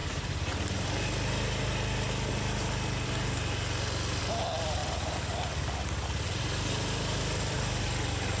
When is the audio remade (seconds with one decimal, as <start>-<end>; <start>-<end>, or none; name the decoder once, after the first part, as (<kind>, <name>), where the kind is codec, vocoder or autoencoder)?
none